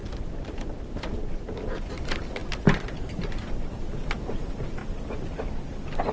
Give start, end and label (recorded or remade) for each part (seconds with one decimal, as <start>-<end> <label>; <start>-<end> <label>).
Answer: 0.0-4.8 remade; 4.8-6.1 recorded

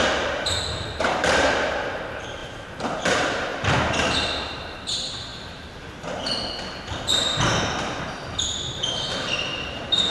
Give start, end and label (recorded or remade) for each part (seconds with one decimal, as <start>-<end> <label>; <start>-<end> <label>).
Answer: 0.0-3.5 remade; 3.5-4.5 recorded; 4.5-5.3 remade; 5.3-7.1 recorded; 7.1-10.1 remade

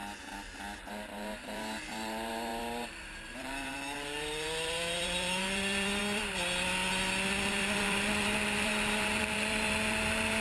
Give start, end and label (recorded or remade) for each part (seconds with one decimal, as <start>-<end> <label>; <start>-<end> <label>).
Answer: 0.0-0.9 recorded; 0.9-6.0 remade; 6.0-7.5 recorded; 7.5-10.4 remade

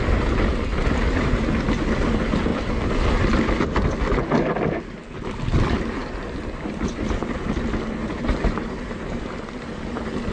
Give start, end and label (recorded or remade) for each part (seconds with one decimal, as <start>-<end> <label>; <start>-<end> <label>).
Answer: 0.0-6.0 recorded; 6.0-7.5 remade; 7.5-8.0 recorded; 8.0-9.2 remade; 9.2-10.3 recorded